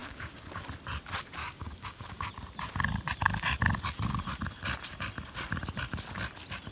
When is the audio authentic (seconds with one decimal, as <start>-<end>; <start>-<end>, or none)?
0.6-1.4; 2.3-6.7